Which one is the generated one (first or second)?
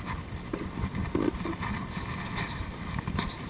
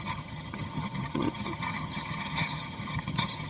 second